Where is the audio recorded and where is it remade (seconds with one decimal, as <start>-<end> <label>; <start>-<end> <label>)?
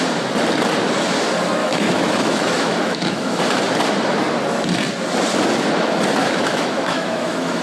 0.0-1.6 recorded; 1.6-3.4 remade; 3.4-6.2 recorded; 6.2-7.6 remade